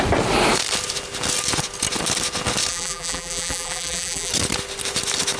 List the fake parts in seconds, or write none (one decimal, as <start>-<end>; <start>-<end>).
2.7-4.3